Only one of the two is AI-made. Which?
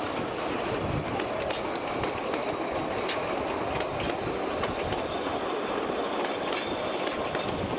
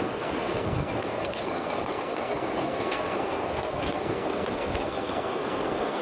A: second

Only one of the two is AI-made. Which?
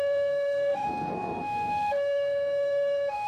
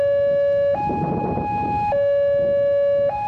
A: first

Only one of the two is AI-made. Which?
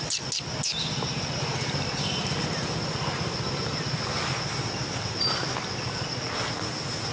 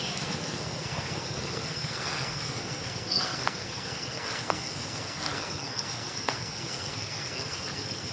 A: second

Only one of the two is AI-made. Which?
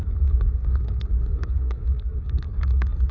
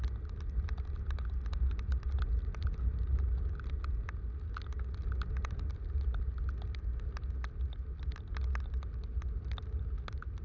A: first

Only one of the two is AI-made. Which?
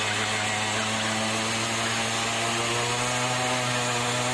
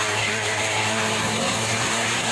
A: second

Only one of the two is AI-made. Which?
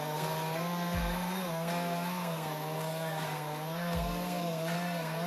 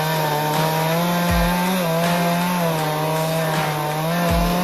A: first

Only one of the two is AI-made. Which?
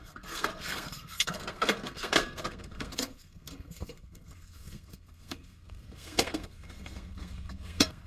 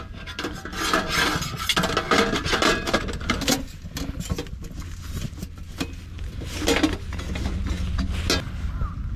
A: first